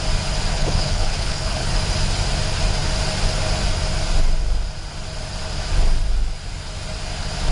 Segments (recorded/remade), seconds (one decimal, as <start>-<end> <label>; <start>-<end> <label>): 0.0-0.5 recorded; 0.5-1.7 remade; 1.7-7.5 recorded